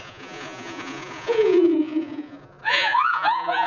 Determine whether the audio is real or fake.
fake